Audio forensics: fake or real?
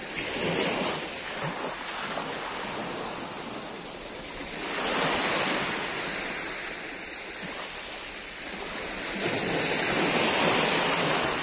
real